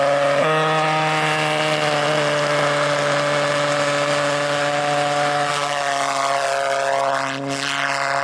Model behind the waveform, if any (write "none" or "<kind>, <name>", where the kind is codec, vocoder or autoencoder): none